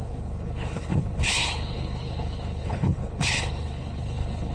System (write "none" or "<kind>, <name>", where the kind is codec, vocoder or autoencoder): codec, HILCodec